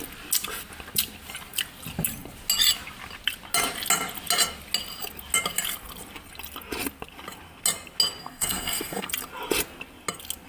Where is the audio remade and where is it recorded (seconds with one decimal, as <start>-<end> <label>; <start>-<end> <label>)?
0.0-8.2 recorded; 8.2-9.1 remade; 9.1-10.5 recorded